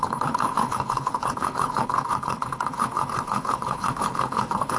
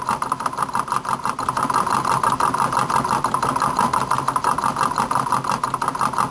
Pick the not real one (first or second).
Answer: first